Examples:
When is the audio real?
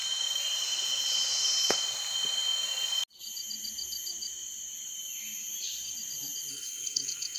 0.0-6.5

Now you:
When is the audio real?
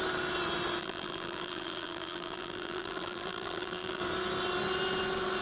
0.0-0.8; 4.0-5.4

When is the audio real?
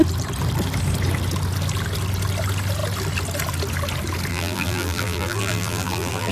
0.0-4.3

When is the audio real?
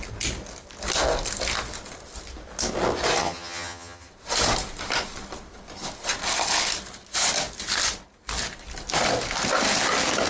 0.0-3.2; 4.1-10.3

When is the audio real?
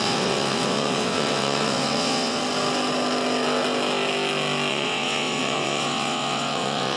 2.4-4.7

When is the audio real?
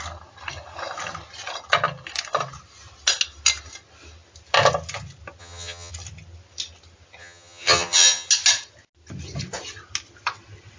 0.0-5.4; 5.9-7.2; 8.3-10.8